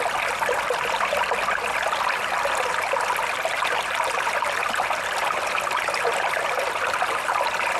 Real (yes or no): no